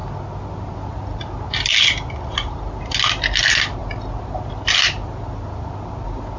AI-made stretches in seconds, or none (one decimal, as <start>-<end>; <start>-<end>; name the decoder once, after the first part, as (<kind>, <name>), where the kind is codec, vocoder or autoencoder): none